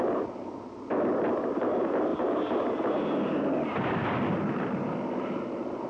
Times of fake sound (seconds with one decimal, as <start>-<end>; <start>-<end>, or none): none